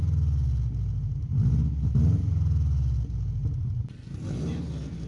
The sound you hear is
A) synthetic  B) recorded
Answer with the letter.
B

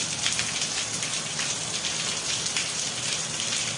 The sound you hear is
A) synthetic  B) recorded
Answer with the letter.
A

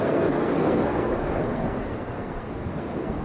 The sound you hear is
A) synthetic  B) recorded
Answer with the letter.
A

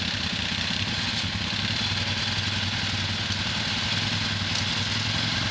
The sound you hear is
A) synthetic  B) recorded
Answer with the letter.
B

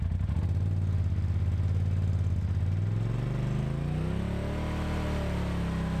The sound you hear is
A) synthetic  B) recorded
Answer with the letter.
B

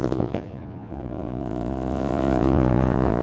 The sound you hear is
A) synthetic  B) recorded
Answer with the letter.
A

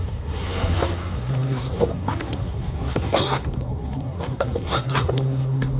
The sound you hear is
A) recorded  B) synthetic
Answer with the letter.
B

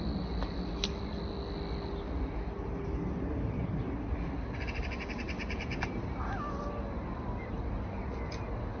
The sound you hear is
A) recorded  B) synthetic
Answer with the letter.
A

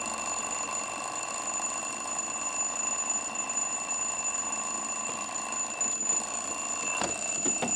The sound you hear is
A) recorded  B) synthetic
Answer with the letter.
A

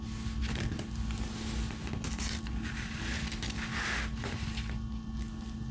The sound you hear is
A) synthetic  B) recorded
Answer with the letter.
B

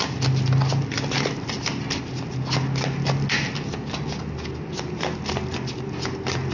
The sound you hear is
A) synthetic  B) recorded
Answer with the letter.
B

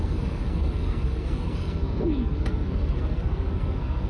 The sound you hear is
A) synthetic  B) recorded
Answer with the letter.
A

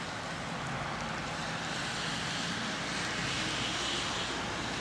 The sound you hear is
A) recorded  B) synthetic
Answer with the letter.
A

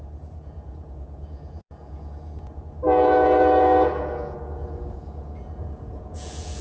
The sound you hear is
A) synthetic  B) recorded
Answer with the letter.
A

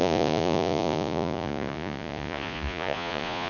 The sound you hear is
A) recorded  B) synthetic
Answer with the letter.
B